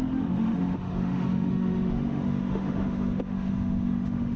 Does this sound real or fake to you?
fake